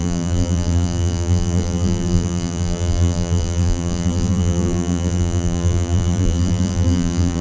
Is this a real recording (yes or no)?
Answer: no